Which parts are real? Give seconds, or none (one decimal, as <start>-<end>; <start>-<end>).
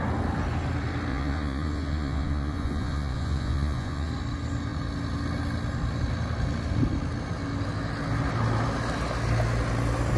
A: 0.0-1.1; 4.1-10.2